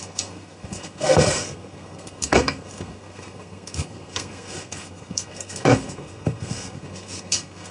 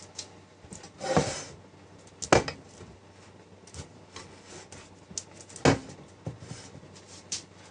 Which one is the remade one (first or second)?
first